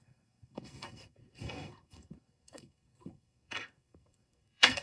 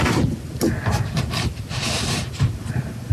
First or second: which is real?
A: second